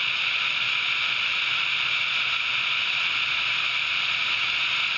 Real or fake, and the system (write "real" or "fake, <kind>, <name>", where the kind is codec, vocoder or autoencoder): real